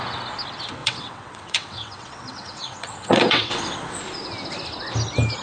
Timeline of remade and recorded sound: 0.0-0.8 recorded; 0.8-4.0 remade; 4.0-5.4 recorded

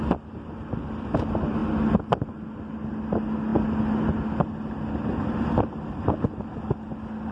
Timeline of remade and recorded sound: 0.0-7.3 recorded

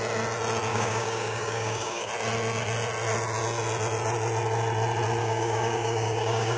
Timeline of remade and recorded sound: 0.0-0.7 recorded; 0.7-2.1 remade; 2.1-5.2 recorded; 5.2-6.6 remade